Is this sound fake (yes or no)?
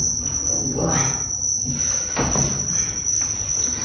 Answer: no